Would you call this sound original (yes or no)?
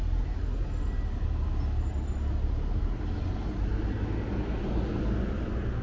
yes